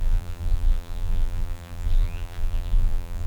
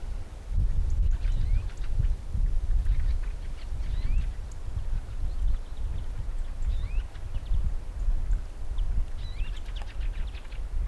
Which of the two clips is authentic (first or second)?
second